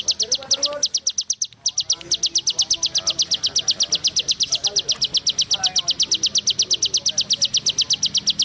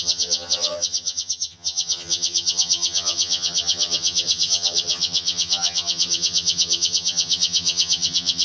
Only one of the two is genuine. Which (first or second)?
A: first